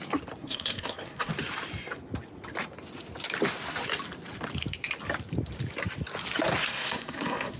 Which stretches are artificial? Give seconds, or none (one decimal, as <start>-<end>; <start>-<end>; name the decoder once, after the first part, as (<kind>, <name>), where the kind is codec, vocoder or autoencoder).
0.4-1.3 (codec, SNAC); 6.6-7.6